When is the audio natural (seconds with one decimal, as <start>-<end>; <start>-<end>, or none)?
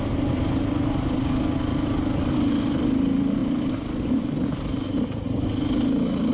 0.0-1.7; 2.8-6.3